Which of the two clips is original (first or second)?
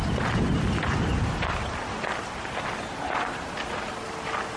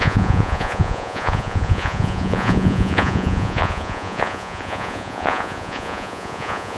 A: first